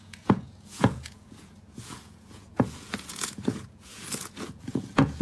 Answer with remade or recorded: remade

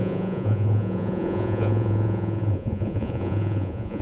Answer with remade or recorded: remade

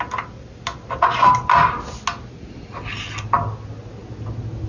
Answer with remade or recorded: recorded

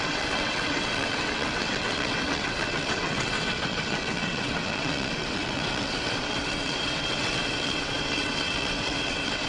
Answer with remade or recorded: remade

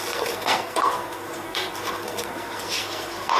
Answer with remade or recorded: remade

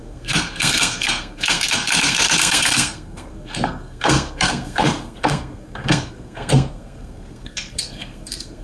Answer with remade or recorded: remade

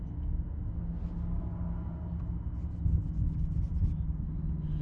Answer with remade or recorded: recorded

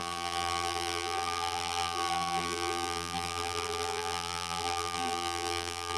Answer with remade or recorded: remade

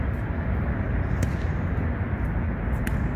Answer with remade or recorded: recorded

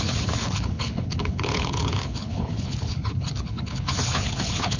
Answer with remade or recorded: remade